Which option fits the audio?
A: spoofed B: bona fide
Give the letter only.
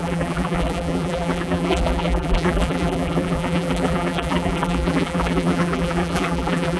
A